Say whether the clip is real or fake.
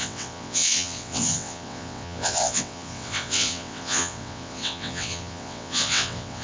fake